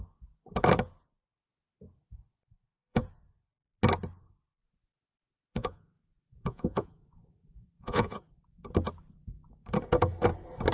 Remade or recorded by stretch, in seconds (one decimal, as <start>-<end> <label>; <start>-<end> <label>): 0.0-2.0 recorded; 2.0-3.0 remade; 3.0-4.5 recorded; 4.5-8.4 remade; 8.4-10.7 recorded